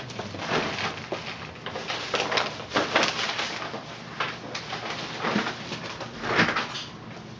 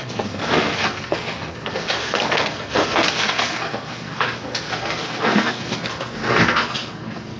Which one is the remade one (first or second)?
second